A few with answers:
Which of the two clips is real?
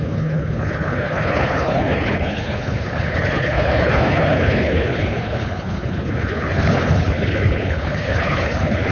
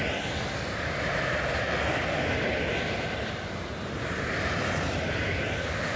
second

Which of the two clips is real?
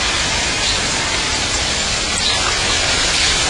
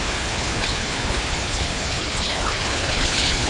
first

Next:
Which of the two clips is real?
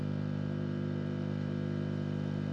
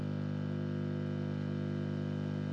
second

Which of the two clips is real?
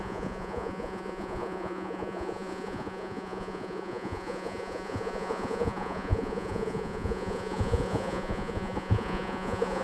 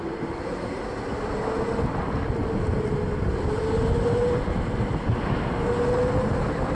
second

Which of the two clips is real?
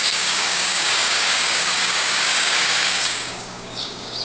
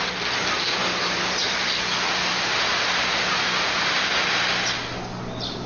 second